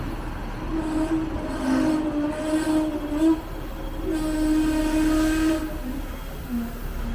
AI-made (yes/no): no